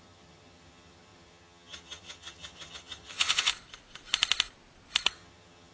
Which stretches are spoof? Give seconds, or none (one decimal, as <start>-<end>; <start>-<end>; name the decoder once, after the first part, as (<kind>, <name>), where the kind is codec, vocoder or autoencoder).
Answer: 0.0-3.5 (vocoder, HiFi-GAN); 5.1-5.7